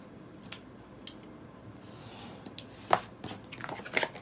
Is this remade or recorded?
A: recorded